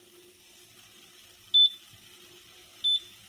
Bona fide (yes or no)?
yes